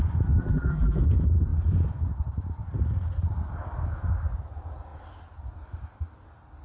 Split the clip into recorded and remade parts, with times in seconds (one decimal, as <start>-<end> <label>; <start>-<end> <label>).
0.0-0.4 recorded; 0.4-1.0 remade; 1.0-6.6 recorded